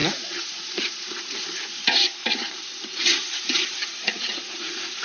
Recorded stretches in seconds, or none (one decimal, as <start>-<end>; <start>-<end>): none